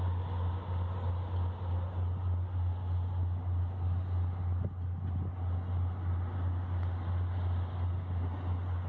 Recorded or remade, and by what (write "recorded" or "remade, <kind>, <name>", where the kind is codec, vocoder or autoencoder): recorded